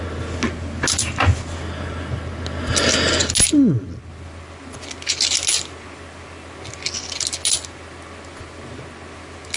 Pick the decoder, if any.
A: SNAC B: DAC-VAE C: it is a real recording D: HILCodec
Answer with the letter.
C